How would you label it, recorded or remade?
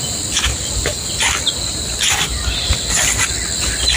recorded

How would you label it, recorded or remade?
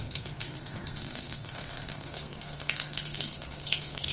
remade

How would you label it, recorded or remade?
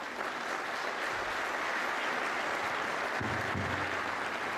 recorded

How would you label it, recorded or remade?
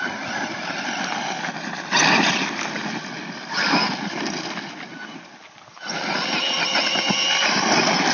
recorded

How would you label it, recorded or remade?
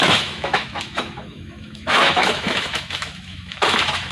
remade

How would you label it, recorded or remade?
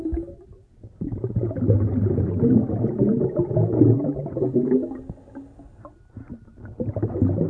recorded